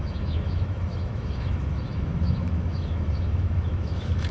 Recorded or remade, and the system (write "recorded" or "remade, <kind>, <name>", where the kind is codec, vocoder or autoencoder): remade, autoencoder, DAC-VAE